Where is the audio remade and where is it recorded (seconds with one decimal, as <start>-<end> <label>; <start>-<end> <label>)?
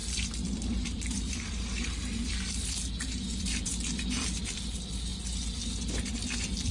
0.0-5.1 remade; 5.1-6.7 recorded